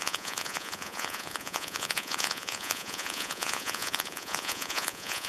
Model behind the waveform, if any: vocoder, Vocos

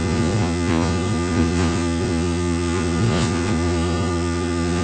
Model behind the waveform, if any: vocoder, Vocos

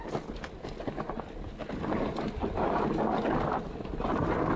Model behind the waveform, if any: none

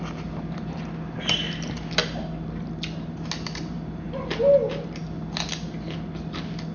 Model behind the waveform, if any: none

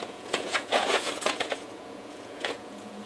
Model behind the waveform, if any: vocoder, Vocos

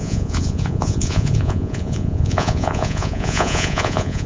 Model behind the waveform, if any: vocoder, Vocos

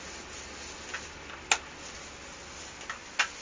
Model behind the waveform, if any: none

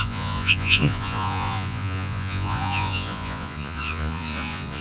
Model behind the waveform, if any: vocoder, Vocos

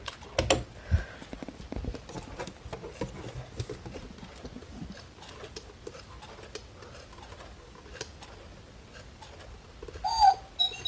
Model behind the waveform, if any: none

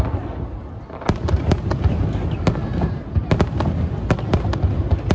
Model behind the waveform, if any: none